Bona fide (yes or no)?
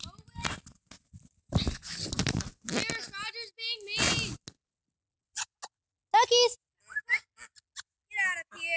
yes